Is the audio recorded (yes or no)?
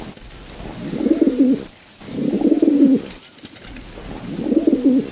yes